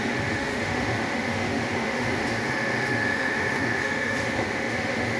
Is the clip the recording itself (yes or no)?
no